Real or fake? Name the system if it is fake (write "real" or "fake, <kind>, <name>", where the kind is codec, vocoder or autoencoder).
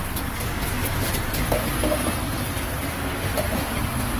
real